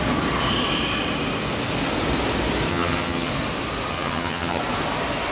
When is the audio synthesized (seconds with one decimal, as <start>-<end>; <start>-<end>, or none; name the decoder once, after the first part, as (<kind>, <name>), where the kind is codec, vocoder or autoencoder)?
2.7-3.3 (vocoder, HiFi-GAN); 3.9-4.6